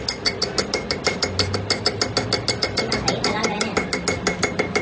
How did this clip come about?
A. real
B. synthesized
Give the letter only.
A